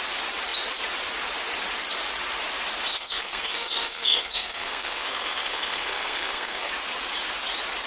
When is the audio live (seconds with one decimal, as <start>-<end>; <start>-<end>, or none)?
0.0-2.9; 6.7-7.9